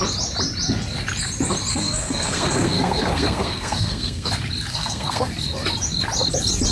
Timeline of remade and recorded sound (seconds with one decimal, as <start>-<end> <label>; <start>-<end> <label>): 0.0-1.7 recorded; 1.7-4.3 remade; 4.3-4.7 recorded; 4.7-5.3 remade; 5.3-6.7 recorded